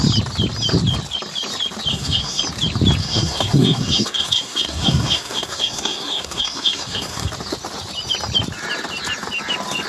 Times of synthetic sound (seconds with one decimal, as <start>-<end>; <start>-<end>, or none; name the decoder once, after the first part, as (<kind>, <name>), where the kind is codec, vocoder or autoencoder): 1.9-2.4 (codec, SNAC); 3.0-7.3